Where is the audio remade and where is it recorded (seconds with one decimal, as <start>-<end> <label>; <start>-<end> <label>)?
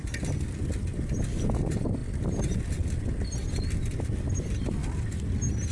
0.0-5.7 recorded